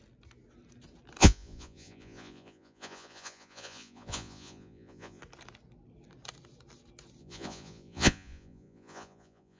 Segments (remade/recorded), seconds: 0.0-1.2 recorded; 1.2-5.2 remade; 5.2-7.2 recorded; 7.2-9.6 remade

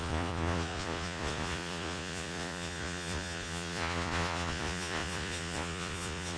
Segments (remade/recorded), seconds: 0.0-6.4 remade

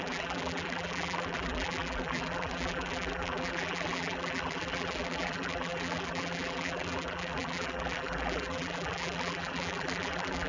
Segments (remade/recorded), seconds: 0.0-10.5 remade

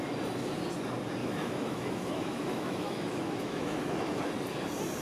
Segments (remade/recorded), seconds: 0.0-1.2 recorded; 1.2-4.2 remade; 4.2-5.0 recorded

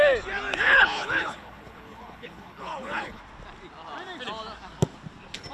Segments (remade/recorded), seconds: 0.0-0.5 recorded; 0.5-3.2 remade; 3.2-5.5 recorded

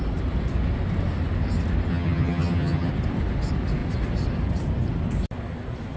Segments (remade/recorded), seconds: 0.0-1.9 recorded; 1.9-2.9 remade; 2.9-6.0 recorded

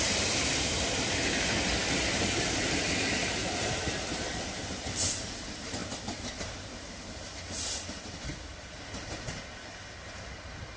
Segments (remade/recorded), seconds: 0.0-10.8 recorded

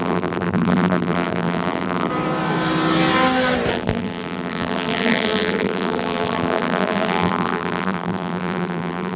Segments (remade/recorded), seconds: 0.0-2.1 remade; 2.1-3.7 recorded; 3.7-9.2 remade